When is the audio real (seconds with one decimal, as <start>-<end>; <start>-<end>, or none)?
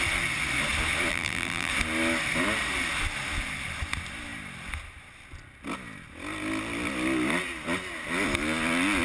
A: 0.0-1.1; 1.7-9.0